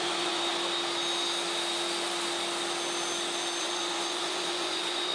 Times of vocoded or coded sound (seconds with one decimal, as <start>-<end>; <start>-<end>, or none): 0.0-0.5; 3.6-5.1